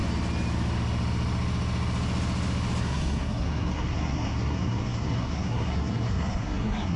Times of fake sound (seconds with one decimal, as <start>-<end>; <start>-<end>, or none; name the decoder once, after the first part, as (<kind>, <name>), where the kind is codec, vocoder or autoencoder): 2.8-7.0 (codec, SNAC)